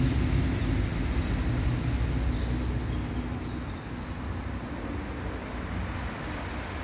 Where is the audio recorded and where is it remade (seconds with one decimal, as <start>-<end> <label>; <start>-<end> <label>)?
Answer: 0.0-6.8 recorded